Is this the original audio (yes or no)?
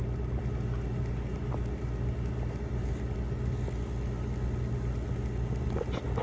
yes